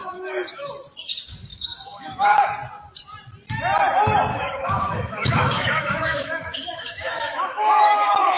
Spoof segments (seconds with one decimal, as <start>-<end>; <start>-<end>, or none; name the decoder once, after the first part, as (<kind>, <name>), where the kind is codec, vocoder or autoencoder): 0.0-0.7 (autoencoder, DAC-VAE); 1.5-2.5; 4.3-8.4